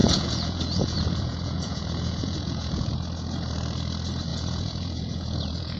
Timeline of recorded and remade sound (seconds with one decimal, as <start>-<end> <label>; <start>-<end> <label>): 0.0-2.9 remade; 2.9-4.3 recorded; 4.3-5.8 remade